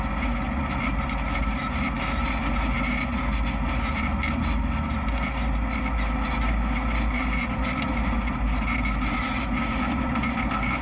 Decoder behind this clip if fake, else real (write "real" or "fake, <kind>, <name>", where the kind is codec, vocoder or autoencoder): real